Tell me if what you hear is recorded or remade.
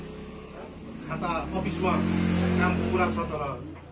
recorded